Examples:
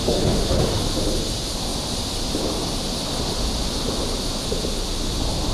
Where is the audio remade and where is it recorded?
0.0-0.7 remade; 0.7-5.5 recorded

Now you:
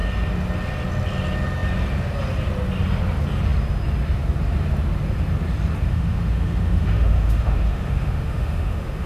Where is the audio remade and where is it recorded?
0.0-5.9 recorded; 5.9-9.1 remade

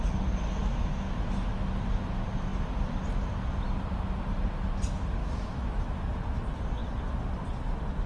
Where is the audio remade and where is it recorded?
0.0-0.6 recorded; 0.6-1.7 remade; 1.7-5.2 recorded; 5.2-6.0 remade; 6.0-8.1 recorded

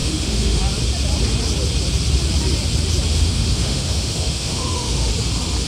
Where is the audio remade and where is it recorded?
0.0-0.6 remade; 0.6-3.1 recorded; 3.1-5.1 remade; 5.1-5.7 recorded

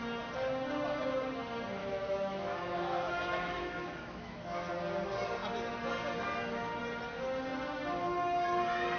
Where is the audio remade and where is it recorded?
0.0-1.8 recorded; 1.8-4.7 remade; 4.7-9.0 recorded

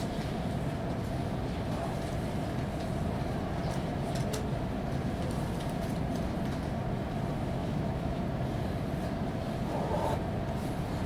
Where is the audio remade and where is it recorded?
0.0-7.6 recorded; 7.6-8.2 remade; 8.2-11.1 recorded

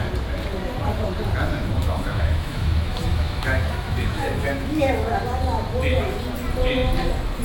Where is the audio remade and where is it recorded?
0.0-1.6 recorded; 1.6-5.1 remade; 5.1-7.4 recorded

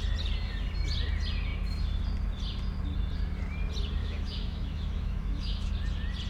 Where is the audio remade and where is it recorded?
0.0-4.0 recorded; 4.0-5.7 remade; 5.7-6.3 recorded